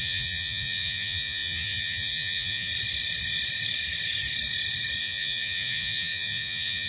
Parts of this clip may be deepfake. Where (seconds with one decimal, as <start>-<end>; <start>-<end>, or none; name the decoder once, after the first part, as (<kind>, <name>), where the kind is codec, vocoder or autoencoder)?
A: 0.0-2.7 (vocoder, Vocos); 5.0-6.9